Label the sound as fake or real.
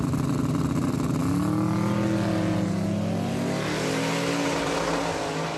real